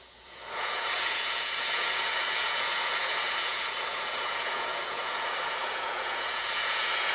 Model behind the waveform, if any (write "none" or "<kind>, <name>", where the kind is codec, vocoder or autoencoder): vocoder, Vocos